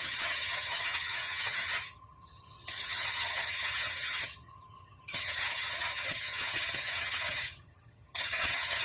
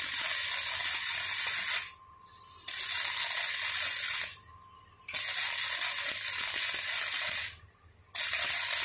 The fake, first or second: first